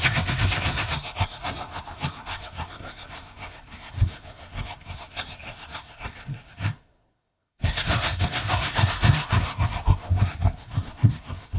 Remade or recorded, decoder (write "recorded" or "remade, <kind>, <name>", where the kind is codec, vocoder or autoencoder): remade, codec, SNAC